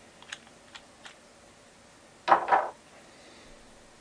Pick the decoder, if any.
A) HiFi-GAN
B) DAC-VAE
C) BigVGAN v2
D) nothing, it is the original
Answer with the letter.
D